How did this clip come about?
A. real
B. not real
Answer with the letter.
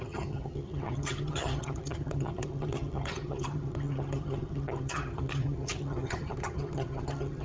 B